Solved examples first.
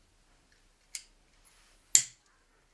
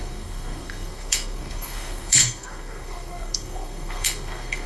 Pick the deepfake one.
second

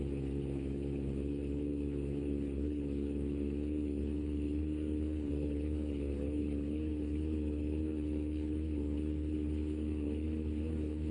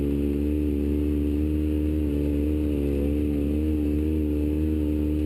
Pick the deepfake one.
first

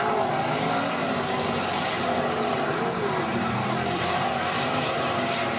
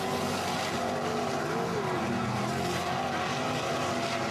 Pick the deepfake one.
first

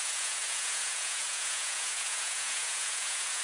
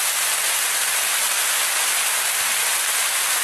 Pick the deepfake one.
first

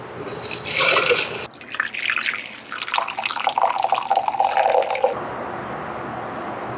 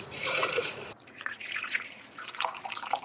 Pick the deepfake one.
second